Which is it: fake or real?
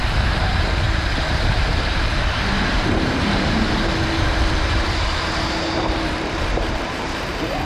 fake